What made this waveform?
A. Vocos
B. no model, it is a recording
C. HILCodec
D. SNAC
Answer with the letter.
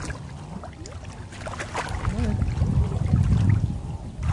B